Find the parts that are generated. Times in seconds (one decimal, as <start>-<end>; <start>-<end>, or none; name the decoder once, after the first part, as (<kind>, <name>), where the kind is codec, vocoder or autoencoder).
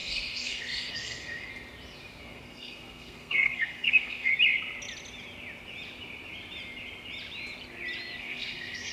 0.0-1.5 (codec, SNAC); 2.2-4.3; 8.2-8.9